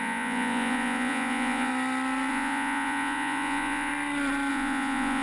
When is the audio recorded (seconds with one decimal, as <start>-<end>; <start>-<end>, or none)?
1.7-2.3; 3.9-4.5